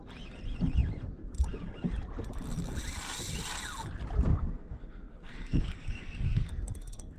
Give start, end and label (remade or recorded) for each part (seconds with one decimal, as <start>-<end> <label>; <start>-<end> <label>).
0.0-4.3 recorded; 4.3-7.2 remade